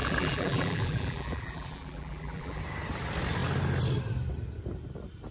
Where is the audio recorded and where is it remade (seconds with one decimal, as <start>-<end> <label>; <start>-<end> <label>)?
0.0-2.6 remade; 2.6-5.3 recorded